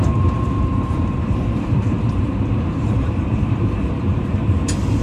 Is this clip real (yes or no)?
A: no